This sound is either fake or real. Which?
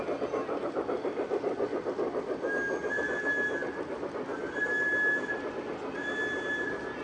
real